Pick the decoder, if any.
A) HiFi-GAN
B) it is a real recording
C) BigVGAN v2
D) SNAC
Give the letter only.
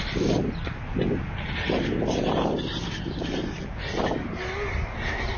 B